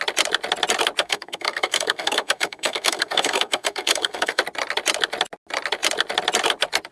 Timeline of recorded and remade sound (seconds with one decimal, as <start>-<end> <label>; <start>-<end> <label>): 0.0-1.0 recorded; 1.0-4.4 remade; 4.4-6.9 recorded